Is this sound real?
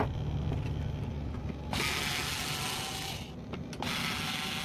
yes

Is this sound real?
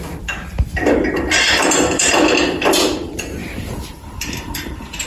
no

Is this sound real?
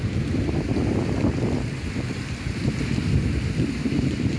yes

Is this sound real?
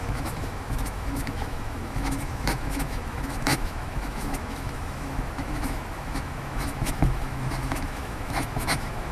no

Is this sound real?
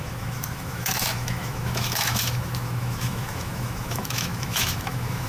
no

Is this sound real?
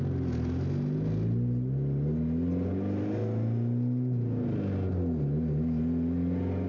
yes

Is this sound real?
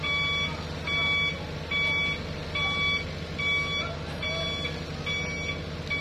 yes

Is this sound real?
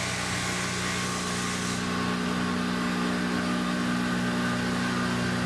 yes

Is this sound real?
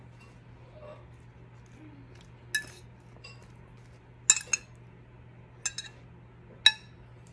yes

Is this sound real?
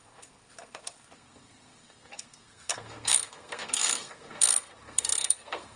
no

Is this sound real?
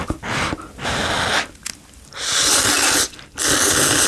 yes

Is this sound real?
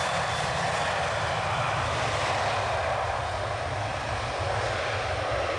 yes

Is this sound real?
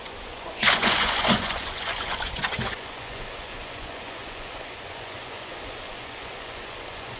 no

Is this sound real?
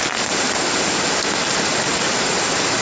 yes